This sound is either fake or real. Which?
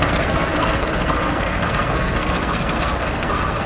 fake